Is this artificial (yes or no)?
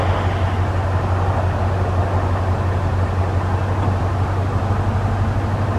no